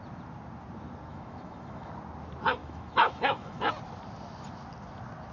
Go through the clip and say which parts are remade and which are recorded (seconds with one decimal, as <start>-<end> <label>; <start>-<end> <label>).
0.0-1.1 recorded; 1.1-1.9 remade; 1.9-2.6 recorded; 2.6-3.7 remade; 3.7-5.3 recorded